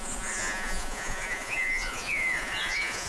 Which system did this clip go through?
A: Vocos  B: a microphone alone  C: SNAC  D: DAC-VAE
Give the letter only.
A